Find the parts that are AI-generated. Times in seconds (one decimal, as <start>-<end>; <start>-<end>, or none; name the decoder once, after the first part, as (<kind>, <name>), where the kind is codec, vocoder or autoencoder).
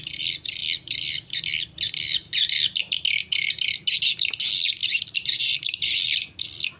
0.6-2.6 (vocoder, BigVGAN v2); 4.8-5.4